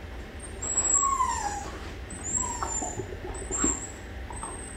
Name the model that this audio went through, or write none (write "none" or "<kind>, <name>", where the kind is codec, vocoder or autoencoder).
none